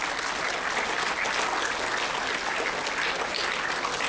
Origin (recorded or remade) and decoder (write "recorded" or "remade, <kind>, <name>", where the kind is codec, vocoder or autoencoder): recorded